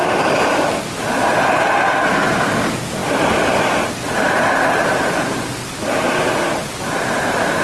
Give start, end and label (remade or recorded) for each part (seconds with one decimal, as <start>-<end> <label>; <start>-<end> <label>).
0.0-7.6 recorded